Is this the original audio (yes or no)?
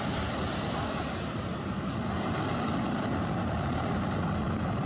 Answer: no